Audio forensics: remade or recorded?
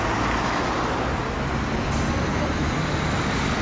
recorded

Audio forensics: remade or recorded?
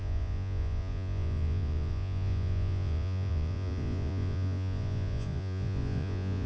remade